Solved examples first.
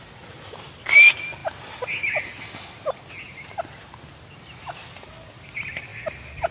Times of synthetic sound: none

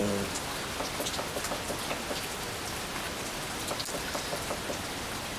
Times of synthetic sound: none

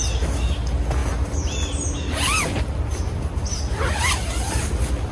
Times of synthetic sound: none

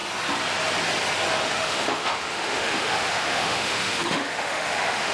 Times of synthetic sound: 1.4-5.1

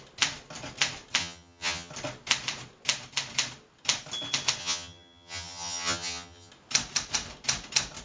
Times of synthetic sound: 1.2-1.9; 4.6-6.5

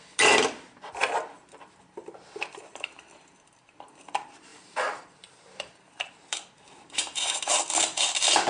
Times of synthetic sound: 0.0-1.0; 1.8-8.5